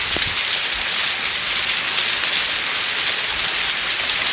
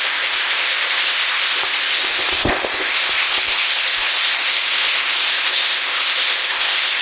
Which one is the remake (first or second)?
second